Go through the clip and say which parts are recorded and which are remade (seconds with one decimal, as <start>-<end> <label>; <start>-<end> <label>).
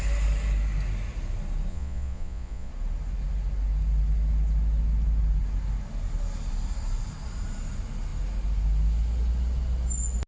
0.0-1.7 recorded; 1.7-2.7 remade; 2.7-10.3 recorded